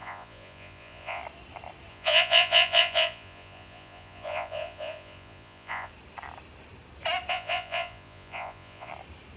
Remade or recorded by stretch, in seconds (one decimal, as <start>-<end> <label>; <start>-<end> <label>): 0.0-1.2 remade; 1.2-1.9 recorded; 1.9-5.9 remade; 5.9-7.3 recorded; 7.3-8.9 remade; 8.9-9.4 recorded